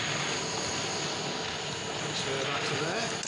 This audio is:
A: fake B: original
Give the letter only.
B